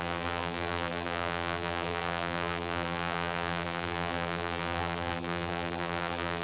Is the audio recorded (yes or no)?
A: no